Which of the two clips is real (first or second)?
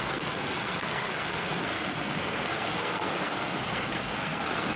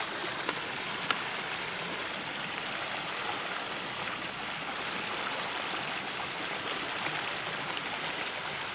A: second